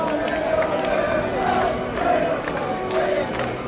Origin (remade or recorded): recorded